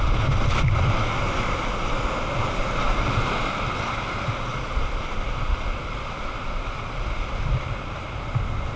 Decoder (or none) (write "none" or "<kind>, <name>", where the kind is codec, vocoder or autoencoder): none